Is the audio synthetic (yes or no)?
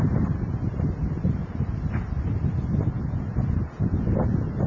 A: no